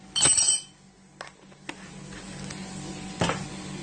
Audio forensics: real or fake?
real